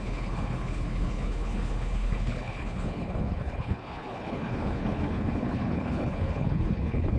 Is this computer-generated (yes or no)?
yes